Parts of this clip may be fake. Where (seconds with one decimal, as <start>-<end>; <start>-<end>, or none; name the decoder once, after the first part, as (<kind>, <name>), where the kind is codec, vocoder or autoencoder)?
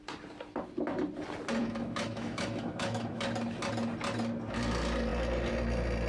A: 1.6-3.2 (autoencoder, DAC-VAE)